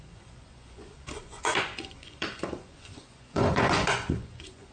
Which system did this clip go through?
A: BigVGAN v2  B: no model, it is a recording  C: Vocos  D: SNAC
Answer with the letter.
C